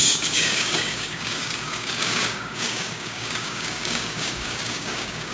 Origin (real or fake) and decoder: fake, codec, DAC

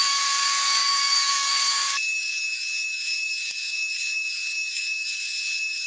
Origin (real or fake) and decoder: fake, codec, DAC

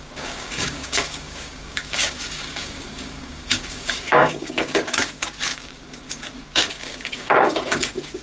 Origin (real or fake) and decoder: fake, codec, DAC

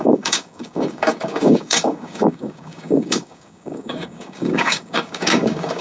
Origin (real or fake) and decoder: fake, codec, DAC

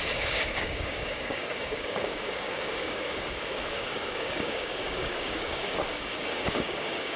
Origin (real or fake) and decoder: fake, codec, DAC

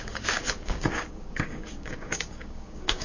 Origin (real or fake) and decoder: fake, codec, DAC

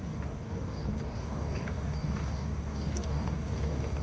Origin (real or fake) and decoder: fake, codec, DAC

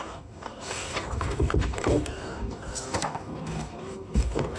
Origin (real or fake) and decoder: fake, codec, DAC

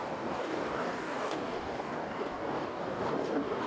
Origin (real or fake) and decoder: fake, codec, DAC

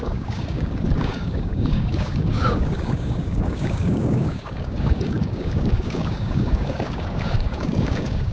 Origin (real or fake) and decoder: fake, codec, DAC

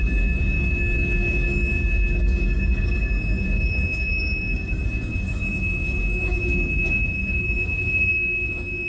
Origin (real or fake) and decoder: fake, codec, DAC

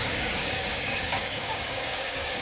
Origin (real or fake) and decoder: fake, codec, DAC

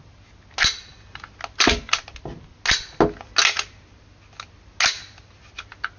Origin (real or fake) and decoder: real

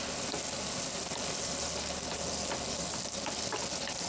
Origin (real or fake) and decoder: real